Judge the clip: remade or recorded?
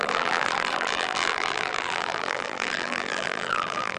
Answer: remade